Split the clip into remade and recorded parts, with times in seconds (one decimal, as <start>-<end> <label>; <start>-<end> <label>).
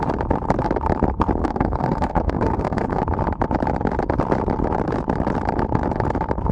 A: 0.0-1.4 recorded; 1.4-3.0 remade; 3.0-6.5 recorded